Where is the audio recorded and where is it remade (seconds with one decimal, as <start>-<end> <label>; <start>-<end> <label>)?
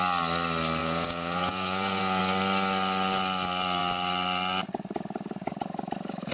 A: 0.0-0.8 recorded; 0.8-2.2 remade; 2.2-6.3 recorded